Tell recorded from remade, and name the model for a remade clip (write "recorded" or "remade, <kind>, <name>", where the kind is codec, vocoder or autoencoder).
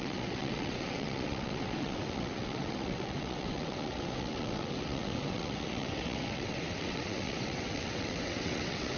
remade, vocoder, WaveNeXt